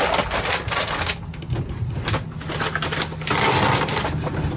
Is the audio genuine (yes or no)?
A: yes